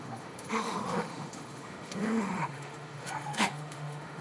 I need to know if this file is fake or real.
fake